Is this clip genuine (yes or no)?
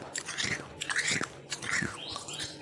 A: no